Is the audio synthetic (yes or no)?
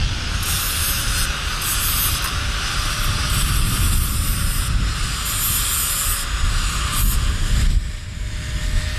no